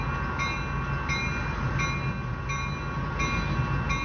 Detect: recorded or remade recorded